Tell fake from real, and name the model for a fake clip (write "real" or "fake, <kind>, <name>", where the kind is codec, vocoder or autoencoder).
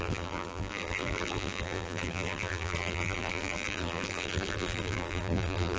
fake, vocoder, BigVGAN v2